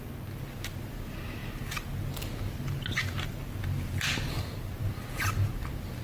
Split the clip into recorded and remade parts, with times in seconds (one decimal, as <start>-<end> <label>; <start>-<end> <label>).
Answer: 0.0-6.0 recorded